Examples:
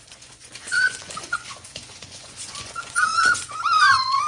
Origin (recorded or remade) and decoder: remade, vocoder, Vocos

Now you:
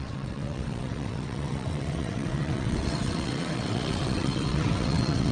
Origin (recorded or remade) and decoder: remade, vocoder, WaveNeXt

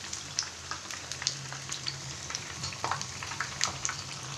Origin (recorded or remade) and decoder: remade, vocoder, BigVGAN v2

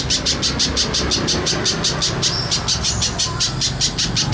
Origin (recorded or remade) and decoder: recorded